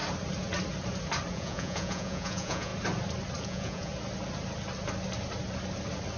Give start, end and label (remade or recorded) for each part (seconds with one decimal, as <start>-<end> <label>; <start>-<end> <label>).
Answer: 0.0-1.3 recorded; 1.3-2.7 remade; 2.7-3.4 recorded; 3.4-3.9 remade; 3.9-6.2 recorded